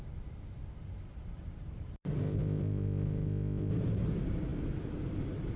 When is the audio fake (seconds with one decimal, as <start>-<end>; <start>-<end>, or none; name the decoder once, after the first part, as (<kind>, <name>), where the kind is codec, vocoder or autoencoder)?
2.2-3.7 (codec, ZipCodec)